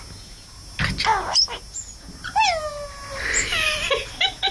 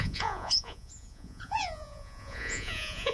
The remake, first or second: second